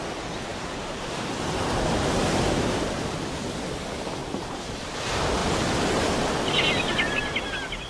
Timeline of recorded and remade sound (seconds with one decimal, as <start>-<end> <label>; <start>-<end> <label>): 0.0-0.5 recorded; 0.5-3.3 remade; 3.3-4.2 recorded; 4.2-4.8 remade; 4.8-7.9 recorded